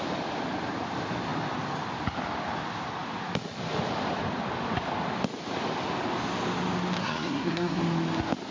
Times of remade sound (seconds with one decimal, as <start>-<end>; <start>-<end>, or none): 7.0-7.8